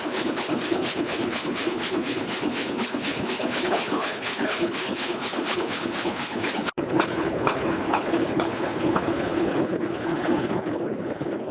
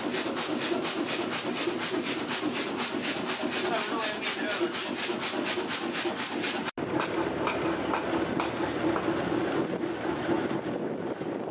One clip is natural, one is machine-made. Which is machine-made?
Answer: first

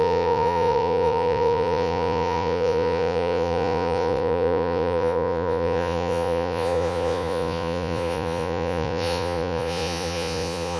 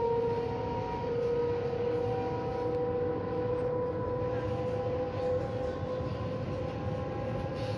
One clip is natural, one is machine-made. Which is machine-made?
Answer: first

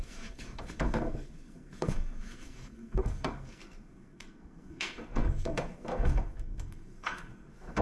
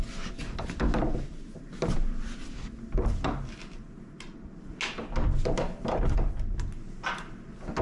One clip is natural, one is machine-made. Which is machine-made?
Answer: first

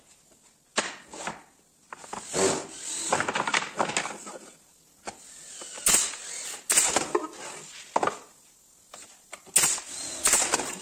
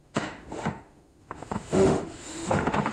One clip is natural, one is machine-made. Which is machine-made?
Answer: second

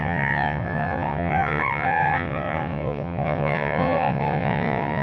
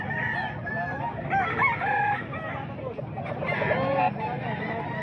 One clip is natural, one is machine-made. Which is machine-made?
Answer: first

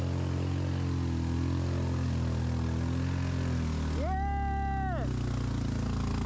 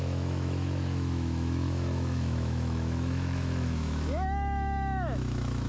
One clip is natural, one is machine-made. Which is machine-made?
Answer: second